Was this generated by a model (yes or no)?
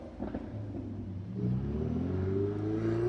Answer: no